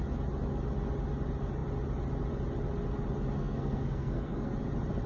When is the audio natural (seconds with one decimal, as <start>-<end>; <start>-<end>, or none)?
0.0-3.4; 4.5-5.1

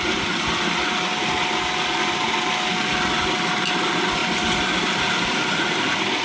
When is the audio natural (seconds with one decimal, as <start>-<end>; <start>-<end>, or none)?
0.0-1.2; 1.8-4.2; 5.7-6.2

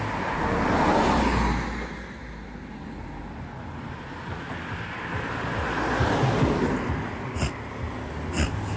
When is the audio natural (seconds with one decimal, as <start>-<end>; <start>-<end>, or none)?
0.0-8.8

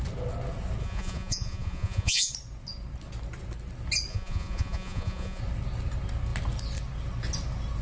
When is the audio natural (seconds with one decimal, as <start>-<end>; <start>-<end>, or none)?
0.0-0.8; 2.3-4.1; 5.4-7.8